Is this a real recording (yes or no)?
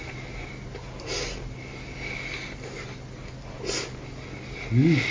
yes